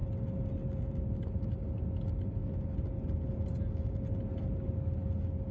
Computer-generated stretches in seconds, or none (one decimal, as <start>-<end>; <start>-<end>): none